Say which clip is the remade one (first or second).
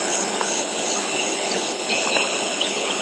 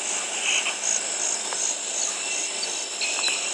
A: first